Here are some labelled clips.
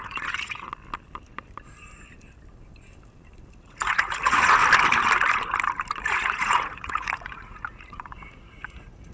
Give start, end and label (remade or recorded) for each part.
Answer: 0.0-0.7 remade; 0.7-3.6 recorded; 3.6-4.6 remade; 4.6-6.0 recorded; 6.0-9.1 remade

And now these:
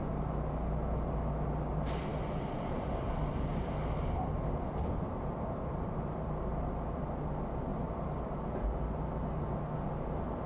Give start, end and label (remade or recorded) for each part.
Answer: 0.0-2.1 recorded; 2.1-7.0 remade; 7.0-7.7 recorded; 7.7-8.5 remade; 8.5-10.5 recorded

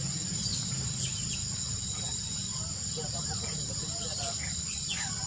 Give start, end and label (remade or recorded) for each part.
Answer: 0.0-2.5 recorded; 2.5-3.4 remade; 3.4-5.3 recorded